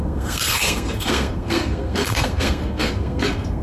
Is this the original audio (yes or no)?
no